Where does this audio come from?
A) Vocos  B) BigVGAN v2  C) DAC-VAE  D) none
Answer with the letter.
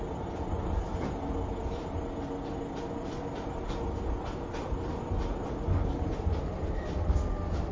D